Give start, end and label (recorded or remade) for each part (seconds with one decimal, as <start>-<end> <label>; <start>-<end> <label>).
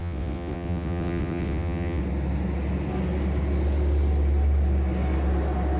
0.0-2.0 remade; 2.0-5.8 recorded